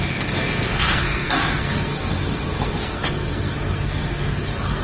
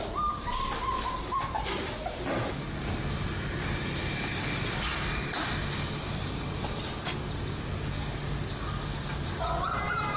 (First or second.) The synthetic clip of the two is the first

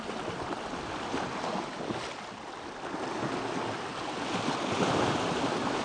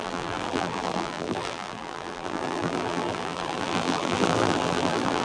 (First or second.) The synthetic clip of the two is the second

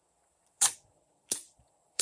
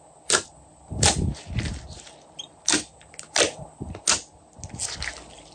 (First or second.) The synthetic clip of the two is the first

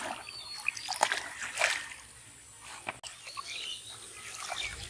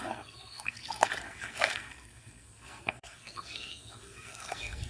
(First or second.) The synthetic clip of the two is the second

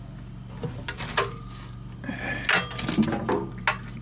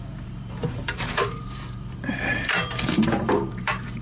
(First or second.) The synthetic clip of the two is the second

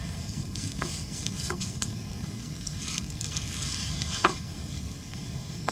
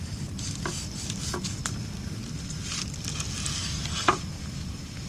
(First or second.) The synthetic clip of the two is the first